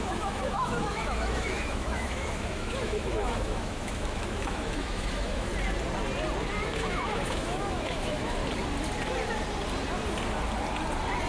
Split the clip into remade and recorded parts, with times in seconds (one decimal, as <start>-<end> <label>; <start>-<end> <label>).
0.0-5.5 remade; 5.5-6.6 recorded; 6.6-8.4 remade; 8.4-11.3 recorded